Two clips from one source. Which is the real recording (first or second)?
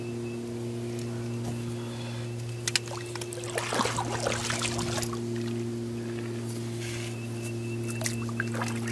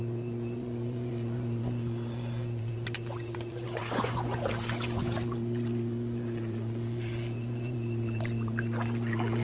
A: first